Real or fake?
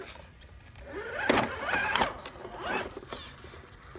real